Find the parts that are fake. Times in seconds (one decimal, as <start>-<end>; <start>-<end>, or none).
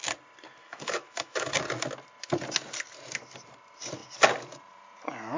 0.6-1.5